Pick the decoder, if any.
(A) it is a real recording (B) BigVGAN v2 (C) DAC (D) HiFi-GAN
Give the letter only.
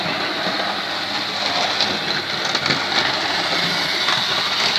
A